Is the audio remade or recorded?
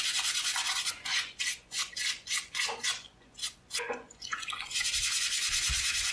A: remade